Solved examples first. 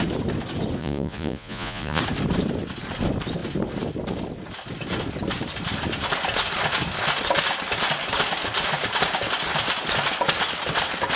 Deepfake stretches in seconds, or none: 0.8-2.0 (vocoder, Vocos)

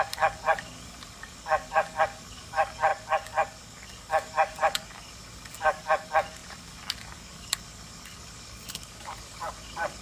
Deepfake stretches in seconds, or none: 0.0-10.0 (codec, DAC)

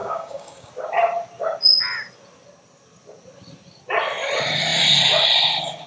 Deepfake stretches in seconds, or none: 0.0-0.7 (codec, DAC)

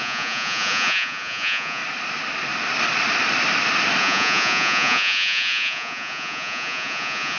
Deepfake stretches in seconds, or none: 0.0-1.8 (vocoder, Vocos); 4.0-7.4

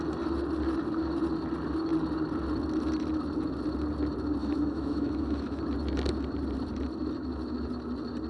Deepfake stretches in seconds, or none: 4.4-5.6 (autoencoder, DAC-VAE)

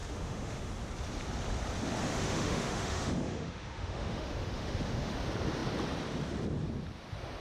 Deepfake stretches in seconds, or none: 0.0-0.7 (autoencoder, DAC-VAE); 2.1-5.1

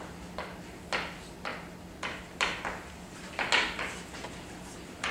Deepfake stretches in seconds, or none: none

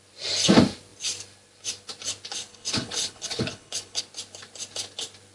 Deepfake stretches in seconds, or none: 2.5-4.0 (codec, HILCodec)